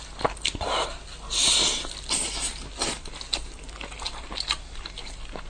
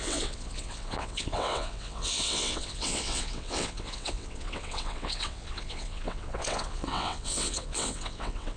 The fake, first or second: second